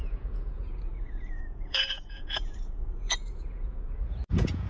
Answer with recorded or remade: remade